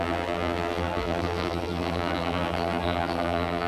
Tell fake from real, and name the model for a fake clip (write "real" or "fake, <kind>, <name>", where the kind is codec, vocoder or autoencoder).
fake, vocoder, BigVGAN v2